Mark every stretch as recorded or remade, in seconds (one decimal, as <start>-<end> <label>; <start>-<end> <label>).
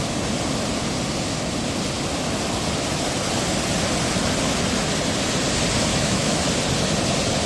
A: 0.0-5.9 recorded; 5.9-6.4 remade; 6.4-7.5 recorded